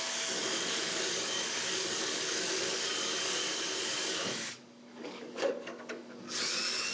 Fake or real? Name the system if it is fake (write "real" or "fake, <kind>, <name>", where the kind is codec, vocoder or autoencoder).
fake, codec, DAC